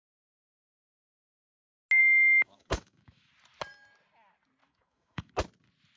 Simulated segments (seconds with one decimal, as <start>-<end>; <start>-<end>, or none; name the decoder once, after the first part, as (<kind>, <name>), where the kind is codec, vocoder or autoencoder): 2.0-3.3 (autoencoder, DAC-VAE); 4.6-5.3

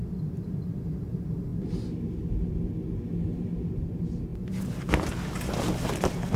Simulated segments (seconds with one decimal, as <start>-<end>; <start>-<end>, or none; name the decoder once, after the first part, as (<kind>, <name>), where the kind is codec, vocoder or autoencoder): none

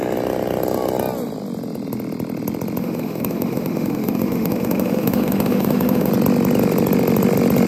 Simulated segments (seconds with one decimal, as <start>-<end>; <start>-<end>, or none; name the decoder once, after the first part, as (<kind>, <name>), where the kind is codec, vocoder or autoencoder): 2.8-6.1 (autoencoder, DAC-VAE)

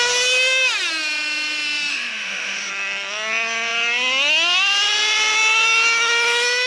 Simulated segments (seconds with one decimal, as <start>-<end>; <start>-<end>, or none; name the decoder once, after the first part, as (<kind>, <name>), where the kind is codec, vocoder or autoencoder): 1.9-2.7 (autoencoder, DAC-VAE)

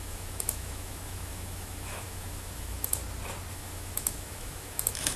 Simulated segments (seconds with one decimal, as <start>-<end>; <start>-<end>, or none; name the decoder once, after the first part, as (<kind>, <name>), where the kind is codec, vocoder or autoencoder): 0.0-3.0 (autoencoder, DAC-VAE); 3.5-5.2

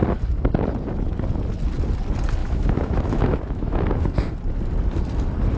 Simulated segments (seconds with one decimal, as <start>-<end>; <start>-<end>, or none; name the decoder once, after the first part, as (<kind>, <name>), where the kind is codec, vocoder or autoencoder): 2.4-4.0 (autoencoder, DAC-VAE)

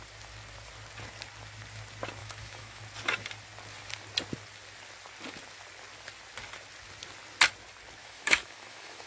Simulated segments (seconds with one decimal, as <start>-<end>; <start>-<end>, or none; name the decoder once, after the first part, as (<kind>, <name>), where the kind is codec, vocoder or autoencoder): 2.2-2.8 (autoencoder, DAC-VAE); 8.0-9.1